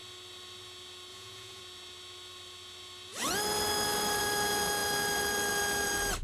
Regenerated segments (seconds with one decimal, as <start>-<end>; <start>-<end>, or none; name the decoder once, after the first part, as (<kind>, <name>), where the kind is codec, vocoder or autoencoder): 1.1-1.6 (vocoder, Vocos)